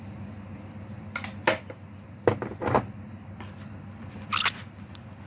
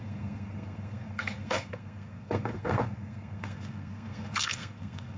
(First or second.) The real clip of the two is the first